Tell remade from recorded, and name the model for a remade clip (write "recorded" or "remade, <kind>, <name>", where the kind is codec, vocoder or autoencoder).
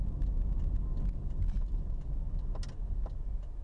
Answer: recorded